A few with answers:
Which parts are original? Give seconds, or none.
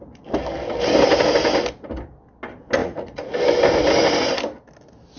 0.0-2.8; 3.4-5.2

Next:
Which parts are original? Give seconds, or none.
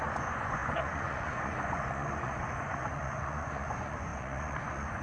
none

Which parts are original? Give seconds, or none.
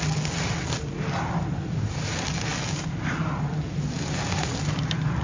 0.0-5.2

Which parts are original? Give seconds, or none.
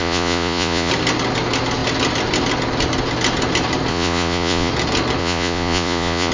0.9-3.9; 4.7-5.2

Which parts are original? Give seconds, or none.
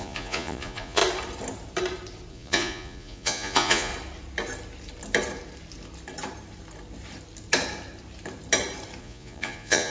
1.0-2.3; 3.9-9.0